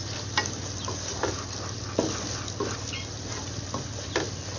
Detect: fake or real real